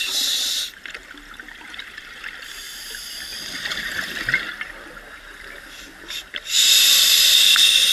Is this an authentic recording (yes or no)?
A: yes